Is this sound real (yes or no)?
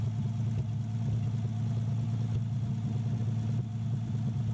yes